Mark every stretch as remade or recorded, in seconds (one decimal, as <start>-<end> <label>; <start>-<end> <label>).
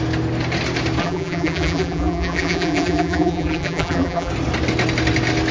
0.0-1.0 recorded; 1.0-4.3 remade; 4.3-5.5 recorded